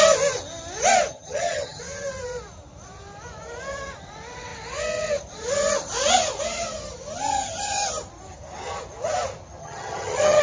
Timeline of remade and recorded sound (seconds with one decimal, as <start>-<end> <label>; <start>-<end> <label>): 0.0-1.1 recorded; 1.1-1.8 remade; 1.8-9.6 recorded; 9.6-10.4 remade